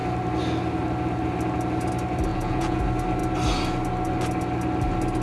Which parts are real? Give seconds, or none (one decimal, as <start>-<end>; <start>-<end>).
0.0-2.3; 2.8-5.2

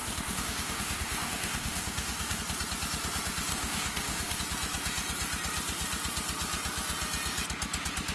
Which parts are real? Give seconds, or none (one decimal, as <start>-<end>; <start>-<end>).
2.4-3.5; 4.4-8.1